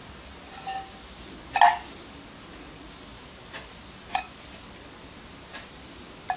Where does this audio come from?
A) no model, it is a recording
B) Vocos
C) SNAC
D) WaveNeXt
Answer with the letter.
A